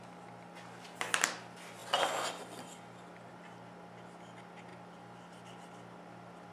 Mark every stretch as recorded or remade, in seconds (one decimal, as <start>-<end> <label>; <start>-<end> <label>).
0.0-6.5 recorded